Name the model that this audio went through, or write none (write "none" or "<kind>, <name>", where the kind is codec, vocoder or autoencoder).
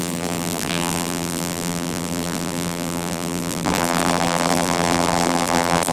vocoder, BigVGAN v2